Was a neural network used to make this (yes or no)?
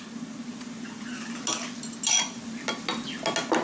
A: no